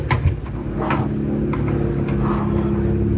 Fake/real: real